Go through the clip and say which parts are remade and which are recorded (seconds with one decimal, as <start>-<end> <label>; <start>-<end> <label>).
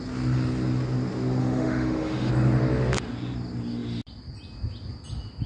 0.0-1.4 recorded; 1.4-2.3 remade; 2.3-5.5 recorded